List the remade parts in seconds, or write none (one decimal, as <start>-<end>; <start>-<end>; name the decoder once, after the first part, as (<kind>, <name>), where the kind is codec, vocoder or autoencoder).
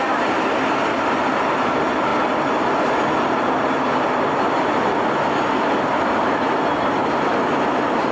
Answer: none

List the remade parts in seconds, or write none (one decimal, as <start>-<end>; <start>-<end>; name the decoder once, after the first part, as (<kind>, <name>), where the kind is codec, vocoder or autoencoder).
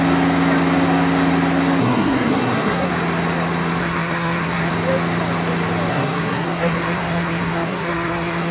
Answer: 1.8-2.9 (codec, SNAC); 3.8-4.7; 5.9-8.5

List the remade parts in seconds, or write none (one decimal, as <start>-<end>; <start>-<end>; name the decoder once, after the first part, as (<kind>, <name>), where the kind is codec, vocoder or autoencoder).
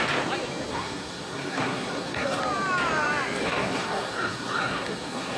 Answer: 0.7-2.4 (codec, SNAC); 3.4-5.4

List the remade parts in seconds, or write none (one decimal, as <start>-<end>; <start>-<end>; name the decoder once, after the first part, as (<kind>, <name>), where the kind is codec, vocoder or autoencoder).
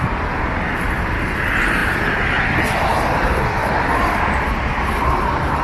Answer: none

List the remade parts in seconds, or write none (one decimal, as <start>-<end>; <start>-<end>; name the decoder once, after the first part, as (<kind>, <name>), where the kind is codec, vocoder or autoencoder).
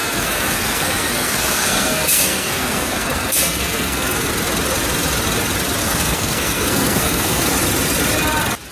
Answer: 0.0-4.3 (codec, SNAC); 5.8-7.5